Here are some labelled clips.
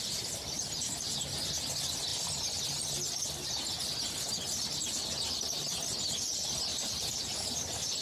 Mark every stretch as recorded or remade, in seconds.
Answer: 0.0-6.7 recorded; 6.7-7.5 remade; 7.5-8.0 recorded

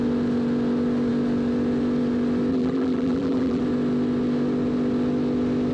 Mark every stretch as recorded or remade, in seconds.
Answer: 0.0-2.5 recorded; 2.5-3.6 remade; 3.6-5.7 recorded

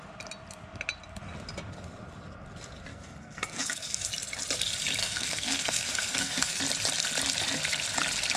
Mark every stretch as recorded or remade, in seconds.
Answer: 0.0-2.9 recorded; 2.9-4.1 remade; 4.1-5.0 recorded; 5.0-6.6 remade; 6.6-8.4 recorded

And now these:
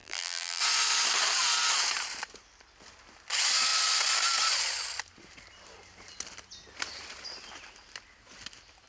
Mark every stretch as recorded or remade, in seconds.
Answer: 0.0-0.6 remade; 0.6-8.9 recorded